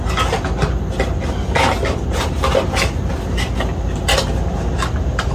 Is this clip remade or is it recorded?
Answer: recorded